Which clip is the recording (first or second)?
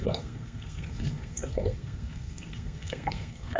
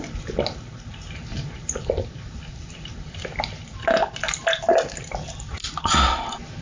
second